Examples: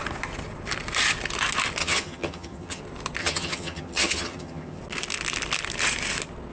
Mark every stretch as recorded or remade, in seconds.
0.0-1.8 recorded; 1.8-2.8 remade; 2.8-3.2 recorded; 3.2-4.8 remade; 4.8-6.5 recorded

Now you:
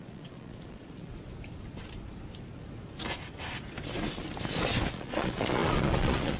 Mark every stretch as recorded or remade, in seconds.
0.0-1.1 remade; 1.1-4.9 recorded; 4.9-6.4 remade

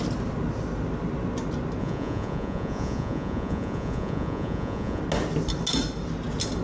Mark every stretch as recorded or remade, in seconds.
0.0-1.8 recorded; 1.8-5.0 remade; 5.0-6.6 recorded